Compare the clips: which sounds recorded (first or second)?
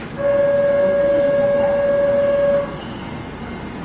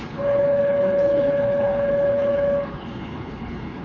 first